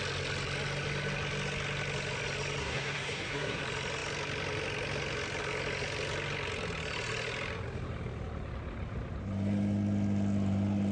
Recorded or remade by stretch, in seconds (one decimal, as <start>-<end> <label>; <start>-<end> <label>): 0.0-2.6 recorded; 2.6-3.6 remade; 3.6-10.9 recorded